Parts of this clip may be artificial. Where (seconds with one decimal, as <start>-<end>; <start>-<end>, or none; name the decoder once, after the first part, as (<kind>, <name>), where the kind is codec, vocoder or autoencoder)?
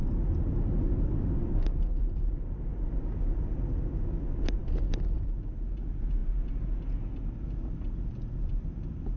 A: none